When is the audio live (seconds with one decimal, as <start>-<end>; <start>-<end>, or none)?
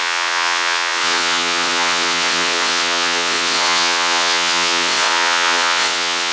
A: none